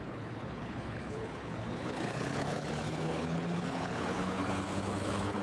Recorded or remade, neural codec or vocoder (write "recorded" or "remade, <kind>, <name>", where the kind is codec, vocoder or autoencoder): remade, codec, HILCodec